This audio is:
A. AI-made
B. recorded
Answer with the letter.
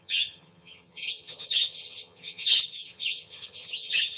A